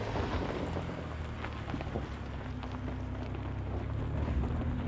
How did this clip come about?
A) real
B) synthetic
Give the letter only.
A